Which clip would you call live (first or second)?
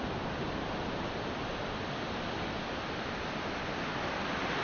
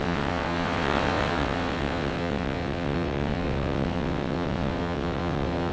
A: first